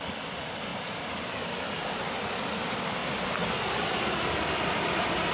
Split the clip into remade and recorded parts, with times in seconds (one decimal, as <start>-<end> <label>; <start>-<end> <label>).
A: 0.0-5.3 recorded